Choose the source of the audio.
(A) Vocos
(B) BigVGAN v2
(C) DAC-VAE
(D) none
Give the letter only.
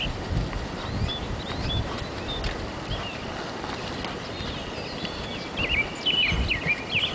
D